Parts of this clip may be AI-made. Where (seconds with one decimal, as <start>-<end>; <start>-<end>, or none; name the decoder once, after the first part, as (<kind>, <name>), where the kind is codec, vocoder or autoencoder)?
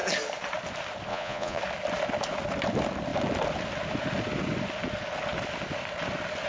1.1-1.6 (vocoder, Vocos)